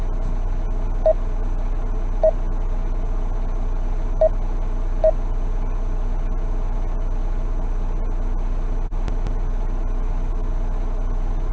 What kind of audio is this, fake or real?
real